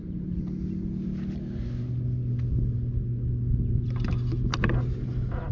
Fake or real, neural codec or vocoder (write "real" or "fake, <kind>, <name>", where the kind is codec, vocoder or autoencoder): real